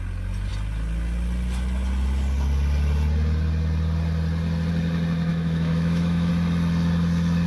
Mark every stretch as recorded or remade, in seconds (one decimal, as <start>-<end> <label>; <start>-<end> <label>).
0.0-5.3 recorded; 5.3-6.3 remade; 6.3-7.5 recorded

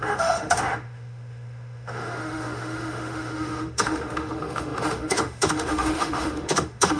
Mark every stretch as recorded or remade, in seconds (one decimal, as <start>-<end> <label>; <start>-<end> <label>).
0.0-7.0 remade